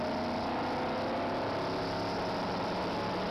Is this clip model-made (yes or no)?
no